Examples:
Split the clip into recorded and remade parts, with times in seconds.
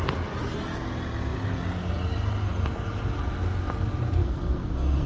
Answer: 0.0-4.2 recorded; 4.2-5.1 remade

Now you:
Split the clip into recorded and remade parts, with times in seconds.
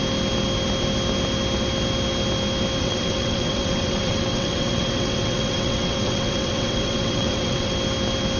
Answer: 0.0-2.8 recorded; 2.8-7.7 remade; 7.7-8.4 recorded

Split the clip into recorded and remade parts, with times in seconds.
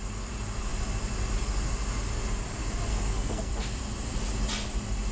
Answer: 0.0-2.9 recorded; 2.9-3.5 remade; 3.5-5.1 recorded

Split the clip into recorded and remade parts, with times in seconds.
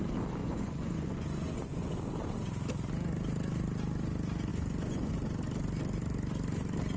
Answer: 0.0-0.4 recorded; 0.4-1.9 remade; 1.9-4.5 recorded; 4.5-5.1 remade; 5.1-7.0 recorded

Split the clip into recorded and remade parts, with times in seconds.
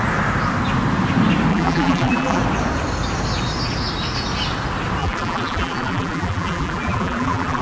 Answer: 0.0-1.5 recorded; 1.5-2.4 remade; 2.4-5.0 recorded; 5.0-7.6 remade